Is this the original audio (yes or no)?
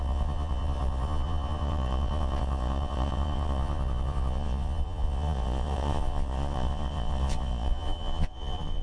no